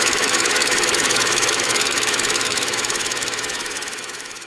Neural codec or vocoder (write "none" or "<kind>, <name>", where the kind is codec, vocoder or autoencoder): autoencoder, DAC-VAE